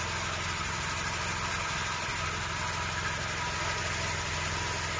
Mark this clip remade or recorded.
recorded